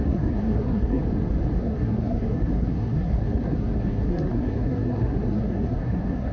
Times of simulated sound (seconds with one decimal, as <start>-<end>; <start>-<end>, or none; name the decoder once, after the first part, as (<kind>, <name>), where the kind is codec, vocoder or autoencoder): 0.0-1.0 (codec, SNAC); 1.6-6.3